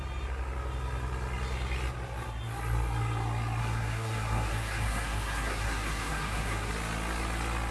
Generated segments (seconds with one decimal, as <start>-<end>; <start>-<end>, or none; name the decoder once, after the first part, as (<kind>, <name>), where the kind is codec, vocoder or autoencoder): 3.6-6.7 (codec, SNAC)